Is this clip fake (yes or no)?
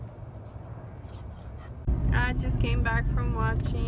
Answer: no